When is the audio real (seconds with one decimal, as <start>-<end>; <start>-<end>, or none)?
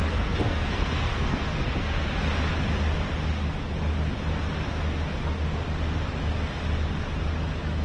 2.2-7.8